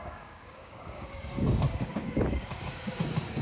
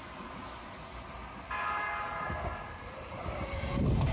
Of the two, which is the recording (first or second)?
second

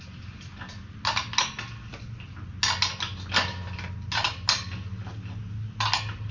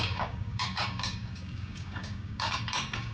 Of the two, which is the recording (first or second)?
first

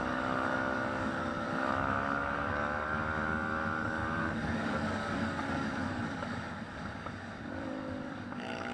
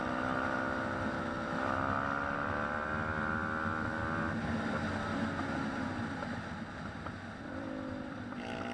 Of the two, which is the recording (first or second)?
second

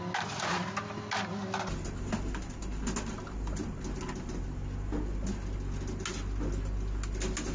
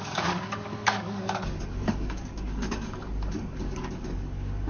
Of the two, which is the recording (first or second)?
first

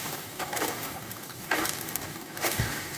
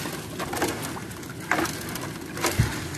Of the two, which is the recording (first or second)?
second